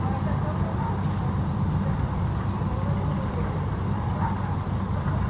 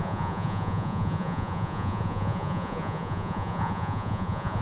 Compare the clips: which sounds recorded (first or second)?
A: first